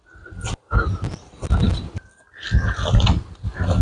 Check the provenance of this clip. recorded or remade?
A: recorded